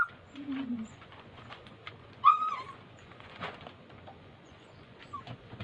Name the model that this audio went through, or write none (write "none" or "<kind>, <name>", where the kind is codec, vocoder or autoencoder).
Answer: vocoder, Vocos